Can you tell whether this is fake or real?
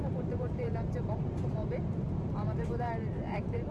fake